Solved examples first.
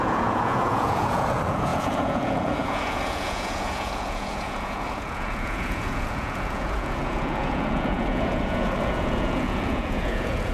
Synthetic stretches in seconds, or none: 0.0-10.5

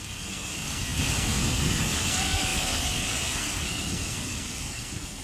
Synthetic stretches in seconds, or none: 0.0-5.2